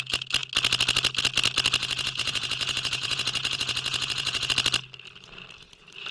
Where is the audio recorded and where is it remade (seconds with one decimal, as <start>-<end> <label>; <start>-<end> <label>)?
0.0-1.8 recorded; 1.8-4.5 remade; 4.5-6.1 recorded